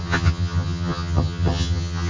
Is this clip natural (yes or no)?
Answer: no